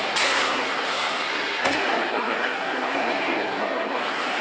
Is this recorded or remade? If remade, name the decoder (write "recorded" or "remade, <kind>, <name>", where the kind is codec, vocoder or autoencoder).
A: remade, codec, SNAC